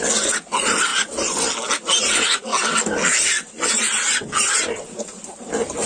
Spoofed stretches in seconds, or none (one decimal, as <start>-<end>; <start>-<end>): none